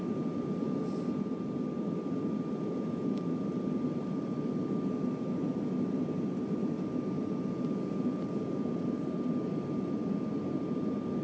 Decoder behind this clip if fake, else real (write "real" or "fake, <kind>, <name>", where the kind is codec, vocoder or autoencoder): real